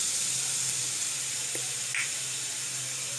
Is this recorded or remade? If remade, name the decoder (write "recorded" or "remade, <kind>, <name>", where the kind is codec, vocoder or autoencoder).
recorded